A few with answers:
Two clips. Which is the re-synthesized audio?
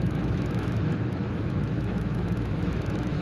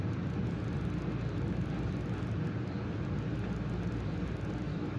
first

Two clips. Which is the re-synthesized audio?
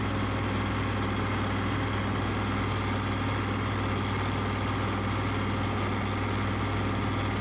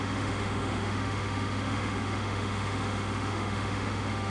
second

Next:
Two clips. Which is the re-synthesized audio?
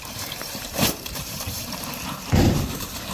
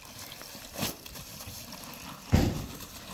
first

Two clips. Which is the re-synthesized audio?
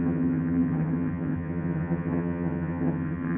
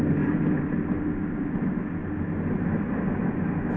first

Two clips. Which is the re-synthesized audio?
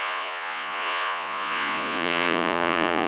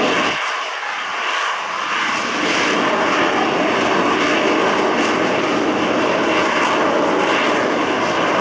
first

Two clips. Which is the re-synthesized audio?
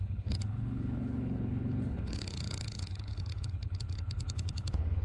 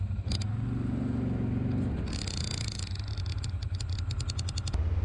first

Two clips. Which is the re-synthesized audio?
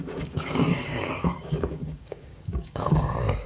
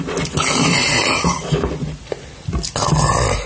first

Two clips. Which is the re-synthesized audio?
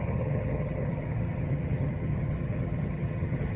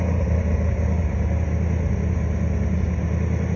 first